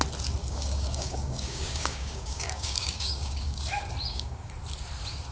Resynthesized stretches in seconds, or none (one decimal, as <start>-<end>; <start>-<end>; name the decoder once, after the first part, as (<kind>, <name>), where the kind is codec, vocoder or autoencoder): 0.4-3.6 (codec, DAC); 4.0-4.5